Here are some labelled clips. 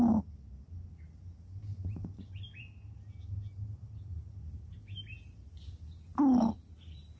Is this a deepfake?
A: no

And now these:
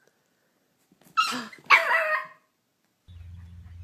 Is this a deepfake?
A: no